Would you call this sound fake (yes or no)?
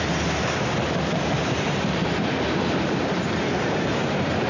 yes